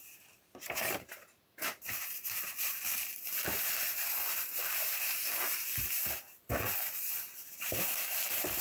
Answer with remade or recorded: remade